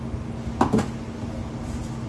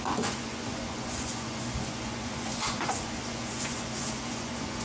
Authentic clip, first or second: first